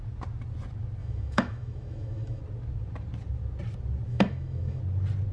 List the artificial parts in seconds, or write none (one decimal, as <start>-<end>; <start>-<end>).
1.0-2.4; 4.1-4.8